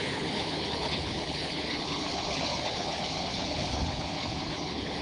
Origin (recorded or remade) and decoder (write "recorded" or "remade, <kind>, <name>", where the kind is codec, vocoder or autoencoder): remade, codec, HILCodec